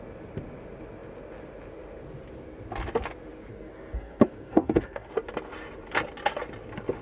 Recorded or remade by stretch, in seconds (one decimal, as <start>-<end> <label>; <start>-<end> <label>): 0.0-3.5 recorded; 3.5-5.1 remade; 5.1-7.0 recorded